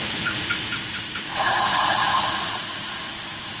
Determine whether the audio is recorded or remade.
remade